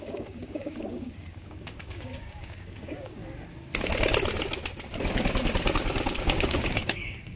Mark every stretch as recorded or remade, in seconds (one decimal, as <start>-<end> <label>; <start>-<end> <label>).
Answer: 0.0-3.2 remade; 3.2-6.2 recorded; 6.2-7.4 remade